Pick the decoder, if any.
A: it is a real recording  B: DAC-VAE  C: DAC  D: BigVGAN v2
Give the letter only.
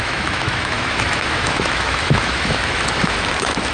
B